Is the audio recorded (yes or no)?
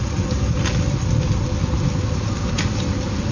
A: yes